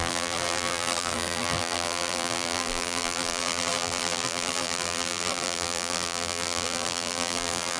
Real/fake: fake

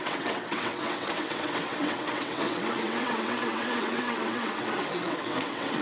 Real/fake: fake